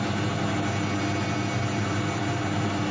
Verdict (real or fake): real